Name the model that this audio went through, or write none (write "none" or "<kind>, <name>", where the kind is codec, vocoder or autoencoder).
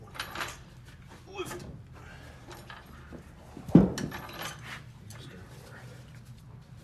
none